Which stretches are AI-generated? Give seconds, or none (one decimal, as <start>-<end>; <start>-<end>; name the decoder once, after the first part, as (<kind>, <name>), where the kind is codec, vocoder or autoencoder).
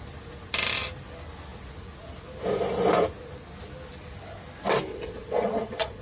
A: 4.9-6.0 (vocoder, Vocos)